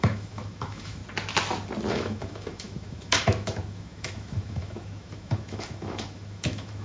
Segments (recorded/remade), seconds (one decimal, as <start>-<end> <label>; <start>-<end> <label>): 0.0-1.0 remade; 1.0-1.9 recorded; 1.9-6.8 remade